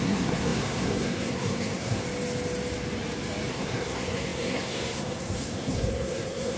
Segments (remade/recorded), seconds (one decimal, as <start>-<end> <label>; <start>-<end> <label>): 0.0-2.0 remade; 2.0-3.5 recorded; 3.5-6.6 remade